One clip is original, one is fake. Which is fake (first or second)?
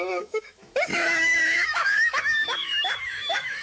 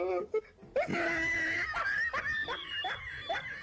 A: first